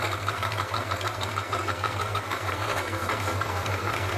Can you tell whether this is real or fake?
fake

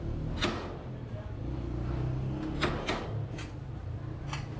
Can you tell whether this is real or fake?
real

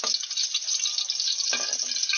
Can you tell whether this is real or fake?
real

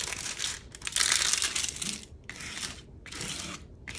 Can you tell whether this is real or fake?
real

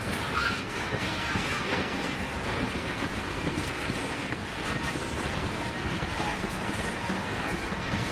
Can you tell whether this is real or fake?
fake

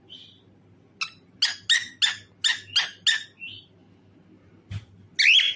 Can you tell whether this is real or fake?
real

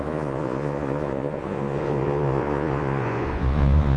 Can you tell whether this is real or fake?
fake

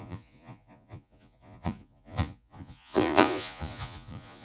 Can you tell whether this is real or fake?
fake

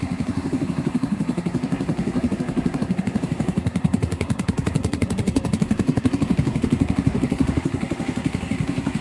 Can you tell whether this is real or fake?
fake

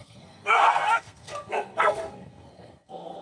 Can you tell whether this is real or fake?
fake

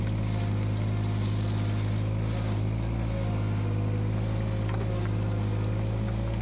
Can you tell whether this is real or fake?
real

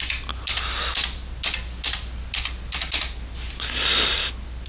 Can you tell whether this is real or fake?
real